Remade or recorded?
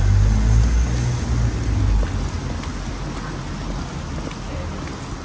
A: recorded